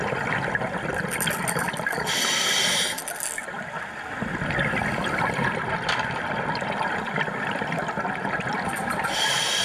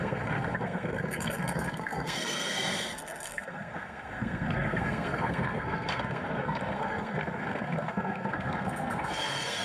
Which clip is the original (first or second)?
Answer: first